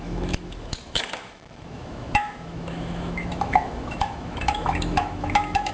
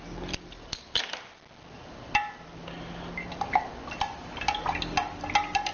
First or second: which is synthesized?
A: first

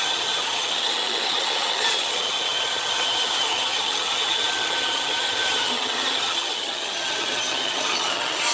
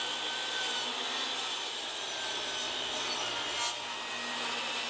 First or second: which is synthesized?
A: first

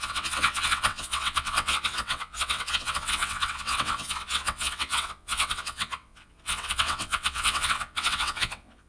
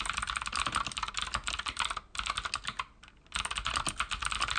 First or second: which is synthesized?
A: first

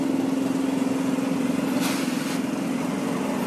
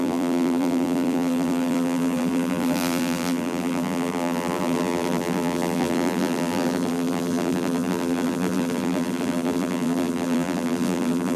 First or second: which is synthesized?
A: second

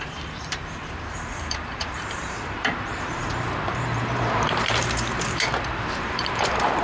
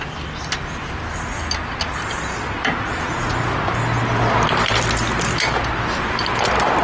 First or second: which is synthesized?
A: first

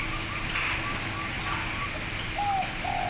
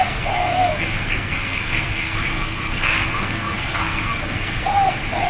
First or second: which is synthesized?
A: second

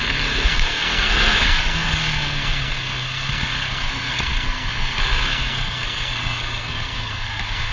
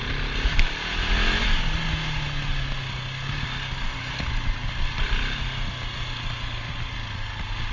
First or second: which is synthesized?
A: first